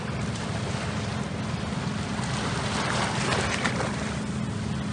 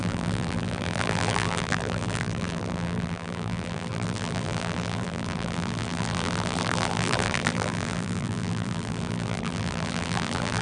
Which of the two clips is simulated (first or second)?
second